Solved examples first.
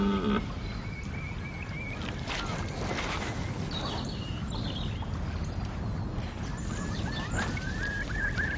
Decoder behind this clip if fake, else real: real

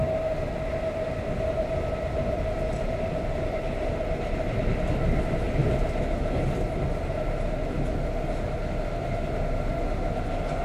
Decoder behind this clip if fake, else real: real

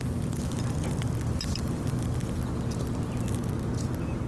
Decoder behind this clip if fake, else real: real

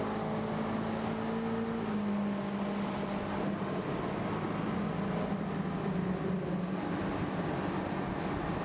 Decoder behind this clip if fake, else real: real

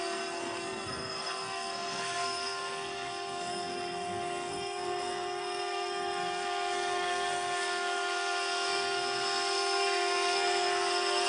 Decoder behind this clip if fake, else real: fake, codec, SNAC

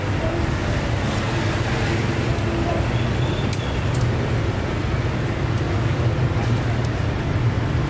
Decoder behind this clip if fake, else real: real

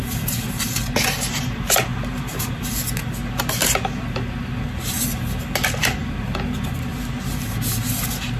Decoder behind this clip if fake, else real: real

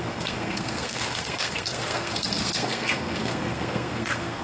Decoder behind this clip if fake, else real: fake, codec, SNAC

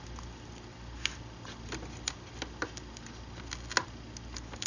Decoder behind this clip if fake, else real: real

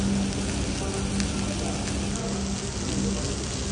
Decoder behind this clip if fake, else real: real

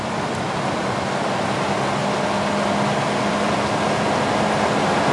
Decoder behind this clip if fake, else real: real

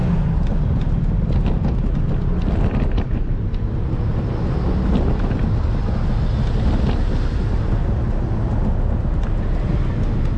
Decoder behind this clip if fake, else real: real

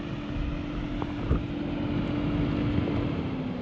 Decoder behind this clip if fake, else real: real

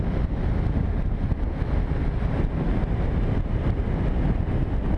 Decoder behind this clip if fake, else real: real